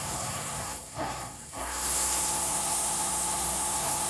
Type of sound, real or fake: fake